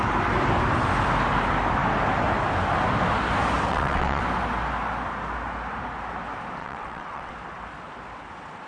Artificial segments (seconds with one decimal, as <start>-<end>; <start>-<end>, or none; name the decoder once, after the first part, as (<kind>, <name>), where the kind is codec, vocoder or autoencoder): 3.7-4.2 (vocoder, WaveNeXt); 6.6-7.3